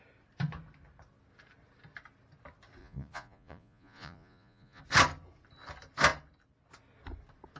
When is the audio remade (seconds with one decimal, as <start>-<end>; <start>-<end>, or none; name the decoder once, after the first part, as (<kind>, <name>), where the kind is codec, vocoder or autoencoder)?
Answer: 2.8-4.8 (vocoder, Vocos)